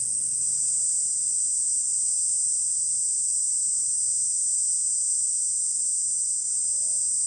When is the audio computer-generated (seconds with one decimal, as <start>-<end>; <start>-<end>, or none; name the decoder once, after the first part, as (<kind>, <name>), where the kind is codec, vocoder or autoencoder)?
none